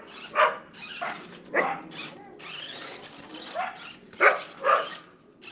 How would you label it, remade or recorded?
recorded